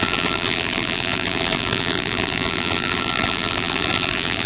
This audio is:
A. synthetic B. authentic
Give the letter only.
A